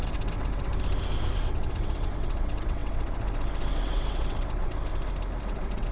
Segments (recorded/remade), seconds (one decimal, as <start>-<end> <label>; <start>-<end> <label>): 0.0-0.7 remade; 0.7-1.3 recorded; 1.3-4.9 remade; 4.9-5.4 recorded; 5.4-5.9 remade